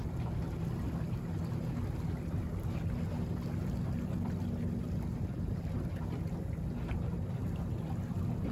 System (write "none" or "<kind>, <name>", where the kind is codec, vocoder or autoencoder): none